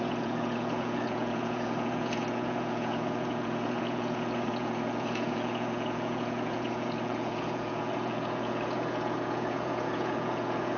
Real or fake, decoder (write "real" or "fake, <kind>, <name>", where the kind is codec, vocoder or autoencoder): fake, vocoder, Vocos